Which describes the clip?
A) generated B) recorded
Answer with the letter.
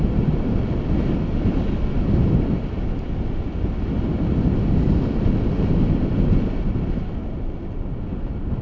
B